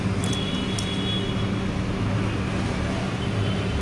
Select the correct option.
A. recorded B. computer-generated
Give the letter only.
A